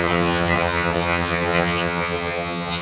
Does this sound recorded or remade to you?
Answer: remade